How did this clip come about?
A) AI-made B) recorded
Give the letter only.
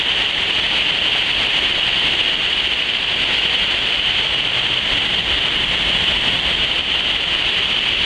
B